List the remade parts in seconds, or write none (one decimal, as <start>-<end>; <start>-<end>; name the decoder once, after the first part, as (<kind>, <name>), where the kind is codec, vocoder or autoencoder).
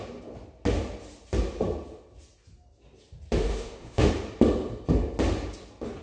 3.5-4.1 (autoencoder, DAC-VAE)